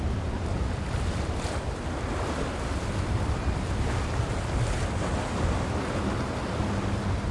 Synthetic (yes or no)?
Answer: no